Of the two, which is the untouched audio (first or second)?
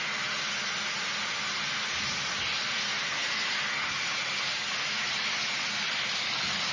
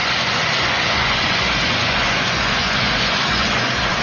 first